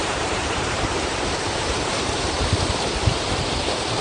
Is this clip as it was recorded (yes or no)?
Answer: no